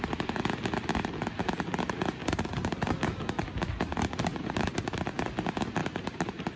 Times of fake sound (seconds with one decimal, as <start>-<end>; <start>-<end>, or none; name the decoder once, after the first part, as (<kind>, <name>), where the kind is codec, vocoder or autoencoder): 4.3-4.8 (vocoder, BigVGAN v2); 5.8-6.6